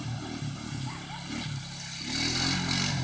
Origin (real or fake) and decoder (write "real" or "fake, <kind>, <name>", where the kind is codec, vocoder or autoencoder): real